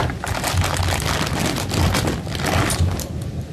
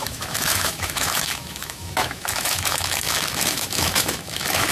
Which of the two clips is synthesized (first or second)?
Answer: second